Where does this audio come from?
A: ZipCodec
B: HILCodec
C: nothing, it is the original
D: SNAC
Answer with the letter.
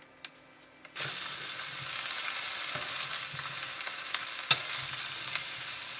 C